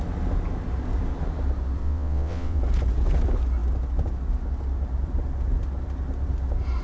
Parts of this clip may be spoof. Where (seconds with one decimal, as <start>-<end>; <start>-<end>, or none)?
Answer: 1.8-2.6